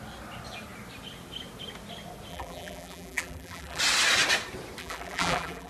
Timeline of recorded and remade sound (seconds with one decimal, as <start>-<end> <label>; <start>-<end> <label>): 0.0-2.3 recorded; 2.3-3.8 remade; 3.8-4.8 recorded; 4.8-5.7 remade